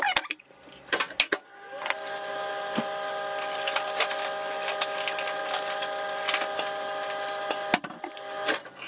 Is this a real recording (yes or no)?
yes